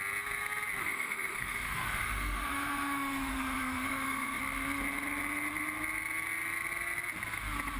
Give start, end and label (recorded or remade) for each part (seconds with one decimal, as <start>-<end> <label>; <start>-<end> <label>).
0.0-0.8 recorded; 0.8-4.4 remade; 4.4-7.8 recorded